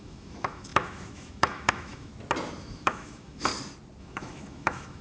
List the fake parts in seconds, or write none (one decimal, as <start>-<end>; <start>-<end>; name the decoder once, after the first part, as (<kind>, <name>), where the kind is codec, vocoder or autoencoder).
0.0-2.1 (autoencoder, DAC-VAE); 2.6-3.5; 4.0-5.0